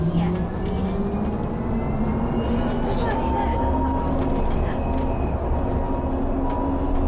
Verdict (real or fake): real